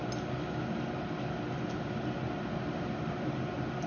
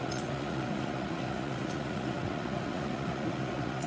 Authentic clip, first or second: first